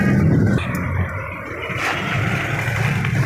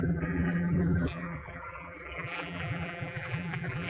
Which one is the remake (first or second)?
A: second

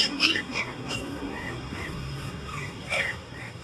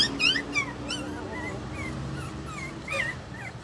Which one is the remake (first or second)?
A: first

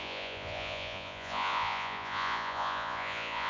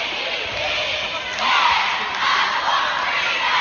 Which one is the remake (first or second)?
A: first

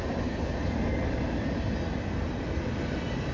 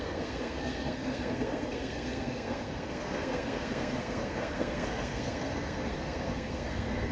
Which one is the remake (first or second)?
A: second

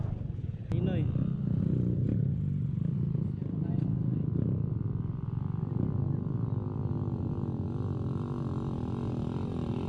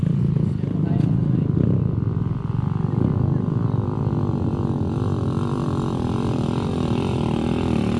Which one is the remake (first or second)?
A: second